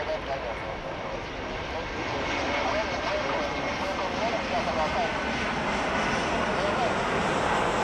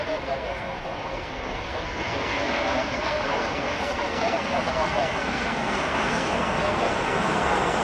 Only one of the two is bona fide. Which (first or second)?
first